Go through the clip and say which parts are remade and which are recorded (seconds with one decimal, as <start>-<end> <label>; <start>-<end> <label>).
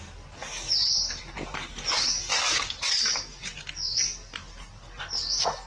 0.0-5.7 recorded